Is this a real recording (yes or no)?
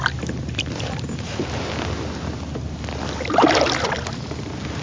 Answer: yes